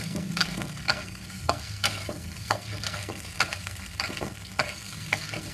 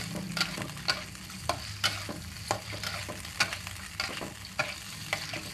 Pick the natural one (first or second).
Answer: second